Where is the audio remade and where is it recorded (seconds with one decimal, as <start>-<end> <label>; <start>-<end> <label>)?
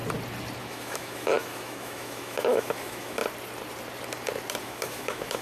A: 0.0-0.6 recorded; 0.6-3.2 remade; 3.2-4.6 recorded; 4.6-5.4 remade